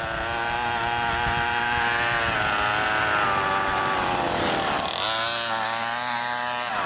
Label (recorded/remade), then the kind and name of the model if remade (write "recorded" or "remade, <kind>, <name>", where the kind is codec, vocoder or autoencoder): recorded